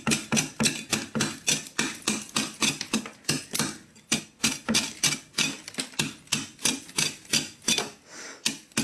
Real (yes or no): yes